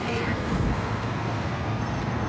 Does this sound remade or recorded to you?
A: remade